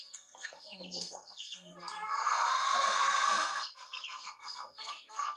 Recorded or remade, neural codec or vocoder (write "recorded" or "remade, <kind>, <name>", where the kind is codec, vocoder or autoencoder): remade, codec, SNAC